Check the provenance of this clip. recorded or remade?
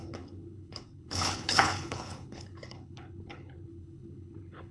remade